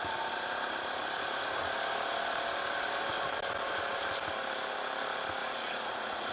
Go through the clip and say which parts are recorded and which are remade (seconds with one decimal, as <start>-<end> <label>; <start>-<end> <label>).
0.0-5.4 recorded; 5.4-6.3 remade